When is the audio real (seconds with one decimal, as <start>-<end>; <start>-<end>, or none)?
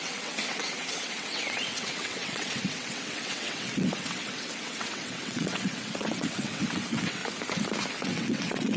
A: 7.2-8.0